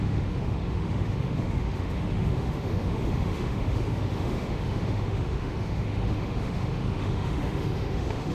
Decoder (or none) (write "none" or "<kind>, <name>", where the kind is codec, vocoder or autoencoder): autoencoder, DAC-VAE